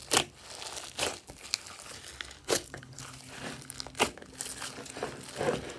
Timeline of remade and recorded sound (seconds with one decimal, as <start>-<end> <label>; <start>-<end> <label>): 0.0-2.4 recorded; 2.4-3.0 remade; 3.0-5.8 recorded